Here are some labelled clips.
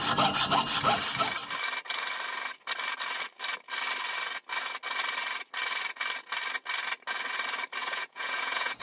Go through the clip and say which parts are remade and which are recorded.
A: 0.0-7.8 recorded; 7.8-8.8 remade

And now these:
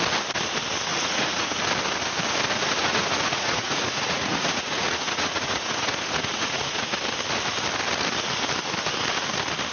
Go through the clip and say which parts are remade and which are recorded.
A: 0.0-0.9 recorded; 0.9-1.6 remade; 1.6-2.8 recorded; 2.8-6.9 remade; 6.9-9.7 recorded

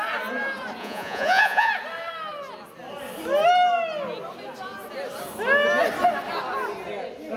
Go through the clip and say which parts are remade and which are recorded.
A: 0.0-0.8 recorded; 0.8-1.7 remade; 1.7-7.4 recorded

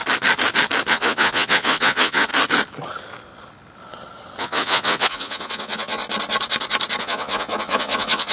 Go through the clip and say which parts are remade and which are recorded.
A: 0.0-0.9 recorded; 0.9-2.3 remade; 2.3-4.4 recorded; 4.4-6.0 remade; 6.0-7.0 recorded; 7.0-8.3 remade

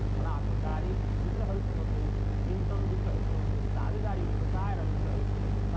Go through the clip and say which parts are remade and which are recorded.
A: 0.0-5.8 recorded

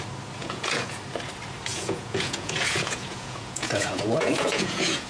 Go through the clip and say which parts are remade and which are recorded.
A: 0.0-0.4 recorded; 0.4-1.0 remade; 1.0-1.7 recorded; 1.7-5.1 remade

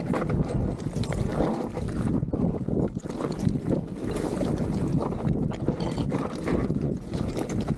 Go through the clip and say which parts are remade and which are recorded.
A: 0.0-6.6 recorded; 6.6-7.2 remade; 7.2-7.8 recorded

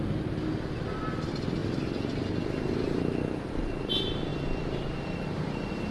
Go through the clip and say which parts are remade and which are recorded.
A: 0.0-5.9 recorded